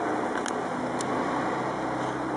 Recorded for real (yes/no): yes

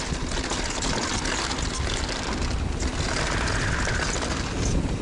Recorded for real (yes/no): yes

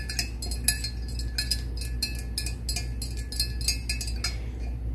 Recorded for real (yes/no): yes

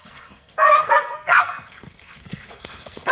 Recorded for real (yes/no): no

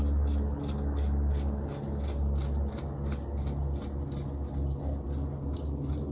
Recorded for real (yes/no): yes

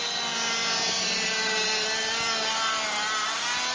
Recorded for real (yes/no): yes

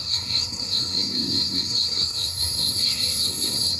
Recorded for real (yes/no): no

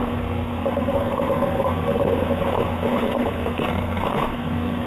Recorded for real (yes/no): no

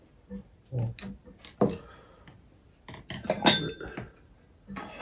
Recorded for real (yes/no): yes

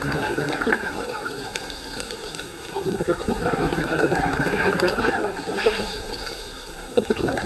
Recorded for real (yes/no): no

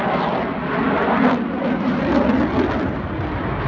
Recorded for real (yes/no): yes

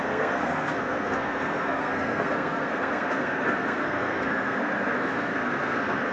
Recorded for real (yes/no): no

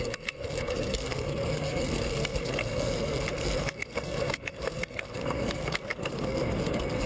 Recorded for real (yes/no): no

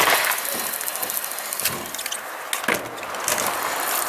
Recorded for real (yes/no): yes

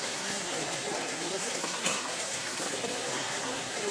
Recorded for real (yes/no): no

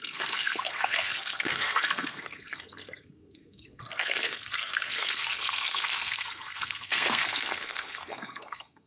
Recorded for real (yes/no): no